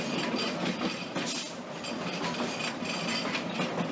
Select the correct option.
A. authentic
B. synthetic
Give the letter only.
A